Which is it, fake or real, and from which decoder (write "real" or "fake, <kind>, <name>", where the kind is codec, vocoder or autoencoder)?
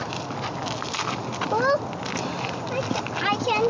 real